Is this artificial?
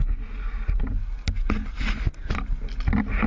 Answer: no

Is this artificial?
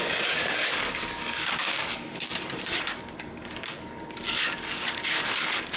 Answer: yes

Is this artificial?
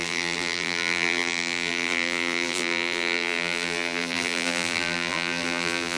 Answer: yes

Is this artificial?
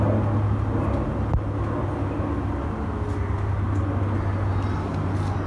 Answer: no